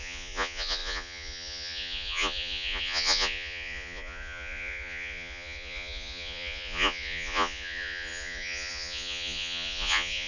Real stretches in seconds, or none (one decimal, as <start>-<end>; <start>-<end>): none